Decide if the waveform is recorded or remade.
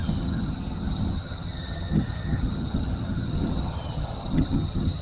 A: remade